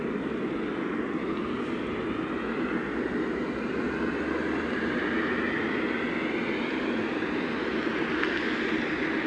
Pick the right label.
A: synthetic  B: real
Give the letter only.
B